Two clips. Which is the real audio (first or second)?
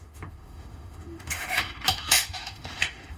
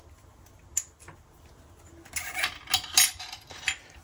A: second